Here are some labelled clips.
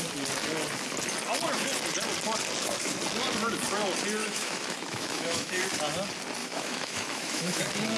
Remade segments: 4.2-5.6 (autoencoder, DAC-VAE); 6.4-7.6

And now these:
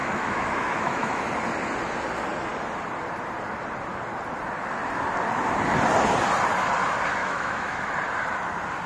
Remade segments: 0.0-1.2 (autoencoder, DAC-VAE); 7.2-7.9

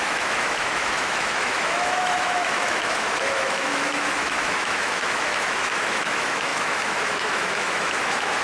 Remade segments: 0.0-8.4 (autoencoder, DAC-VAE)

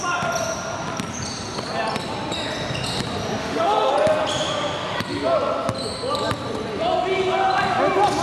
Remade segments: 3.4-3.9 (autoencoder, DAC-VAE)

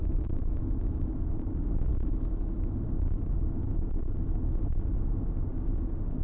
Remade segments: 0.0-1.1 (autoencoder, DAC-VAE); 1.9-2.8

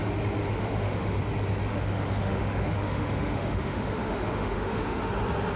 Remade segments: 0.5-1.2 (autoencoder, DAC-VAE); 1.7-5.1